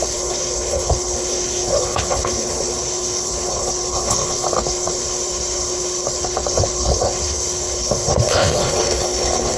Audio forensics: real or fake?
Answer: fake